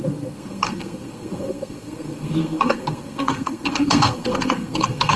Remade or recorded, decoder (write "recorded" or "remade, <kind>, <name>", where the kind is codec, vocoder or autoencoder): remade, codec, SNAC